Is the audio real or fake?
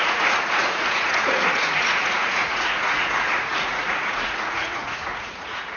fake